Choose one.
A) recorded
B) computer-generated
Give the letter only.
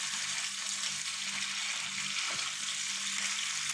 A